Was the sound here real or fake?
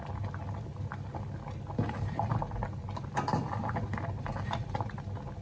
real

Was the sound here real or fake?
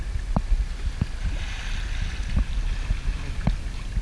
real